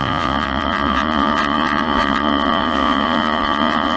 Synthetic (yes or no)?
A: yes